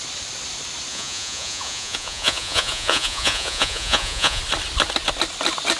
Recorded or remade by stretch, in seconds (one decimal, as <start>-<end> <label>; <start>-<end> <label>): 0.0-0.9 recorded; 0.9-4.4 remade; 4.4-5.8 recorded